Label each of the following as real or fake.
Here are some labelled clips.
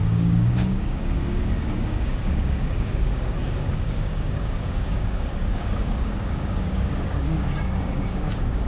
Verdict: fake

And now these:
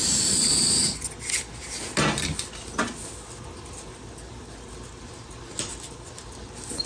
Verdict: real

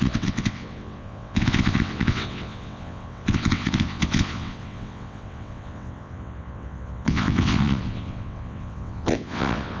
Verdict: fake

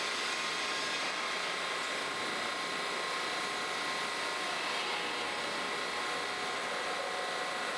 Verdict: real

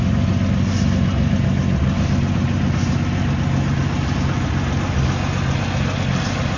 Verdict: real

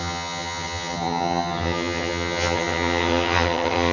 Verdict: fake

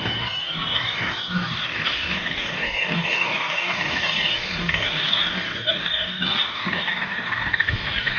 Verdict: fake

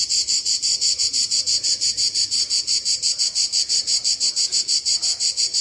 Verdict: fake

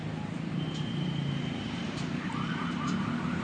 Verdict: fake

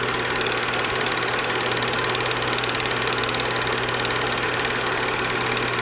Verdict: fake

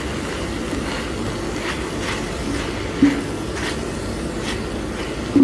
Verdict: real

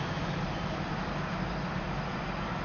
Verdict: real